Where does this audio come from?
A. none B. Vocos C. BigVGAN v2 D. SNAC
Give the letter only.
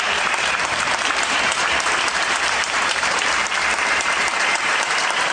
C